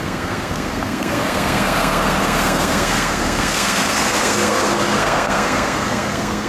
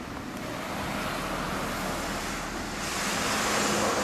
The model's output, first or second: first